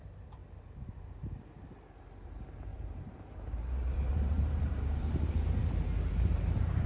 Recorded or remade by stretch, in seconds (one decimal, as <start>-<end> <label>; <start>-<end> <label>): 0.0-2.7 recorded; 2.7-6.9 remade

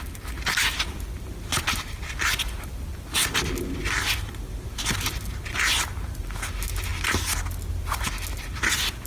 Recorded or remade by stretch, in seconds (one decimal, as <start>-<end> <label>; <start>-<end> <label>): 0.0-9.1 recorded